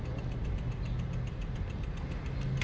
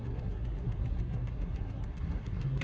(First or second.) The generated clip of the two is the second